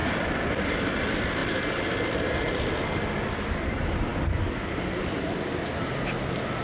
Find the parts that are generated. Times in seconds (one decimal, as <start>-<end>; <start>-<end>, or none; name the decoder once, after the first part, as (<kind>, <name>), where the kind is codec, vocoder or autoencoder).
0.0-0.7 (vocoder, BigVGAN v2)